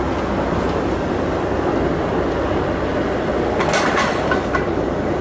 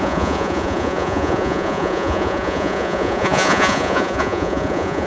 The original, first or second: first